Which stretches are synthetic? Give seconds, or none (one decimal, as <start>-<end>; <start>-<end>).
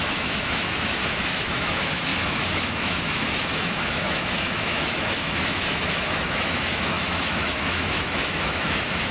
0.0-9.1